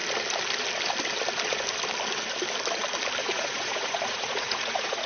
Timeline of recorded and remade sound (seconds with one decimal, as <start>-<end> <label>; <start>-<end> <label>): 0.0-3.2 recorded; 3.2-5.1 remade

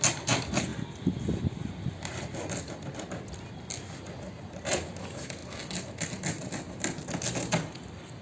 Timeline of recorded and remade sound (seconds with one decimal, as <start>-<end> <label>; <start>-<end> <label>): 0.0-8.2 recorded

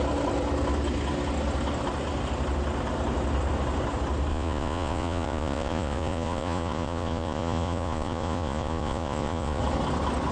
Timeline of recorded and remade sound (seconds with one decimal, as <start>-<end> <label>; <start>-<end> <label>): 0.0-4.3 recorded; 4.3-9.6 remade; 9.6-10.3 recorded

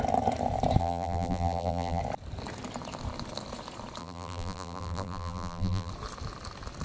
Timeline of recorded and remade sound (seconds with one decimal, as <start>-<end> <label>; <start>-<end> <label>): 0.0-0.8 recorded; 0.8-2.0 remade; 2.0-4.0 recorded; 4.0-5.9 remade; 5.9-6.8 recorded

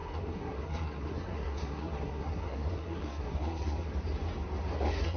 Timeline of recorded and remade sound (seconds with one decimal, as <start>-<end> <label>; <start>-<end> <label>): 0.0-3.9 remade; 3.9-4.8 recorded; 4.8-5.2 remade